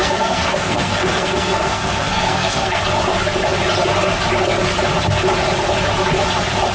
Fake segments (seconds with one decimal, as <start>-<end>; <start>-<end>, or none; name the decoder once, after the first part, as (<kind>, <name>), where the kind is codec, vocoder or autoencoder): 0.0-2.8 (codec, SNAC)